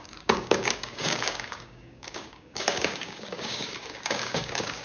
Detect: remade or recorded remade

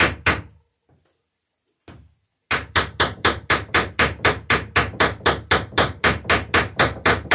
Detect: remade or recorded recorded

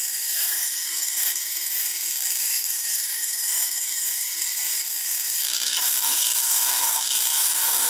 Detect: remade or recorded remade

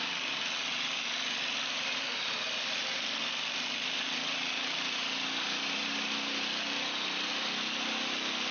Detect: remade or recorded recorded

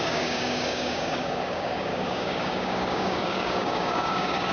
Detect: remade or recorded remade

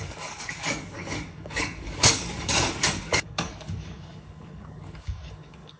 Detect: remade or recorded remade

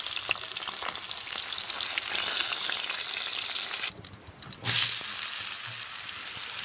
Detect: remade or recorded recorded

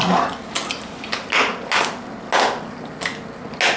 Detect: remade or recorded recorded